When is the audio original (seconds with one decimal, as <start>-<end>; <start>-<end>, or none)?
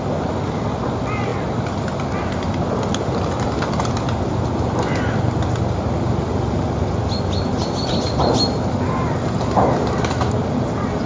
0.0-11.1